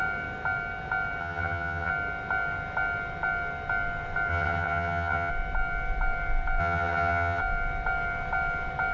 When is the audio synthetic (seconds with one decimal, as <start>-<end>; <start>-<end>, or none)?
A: 1.2-1.9; 4.3-5.3; 6.6-7.4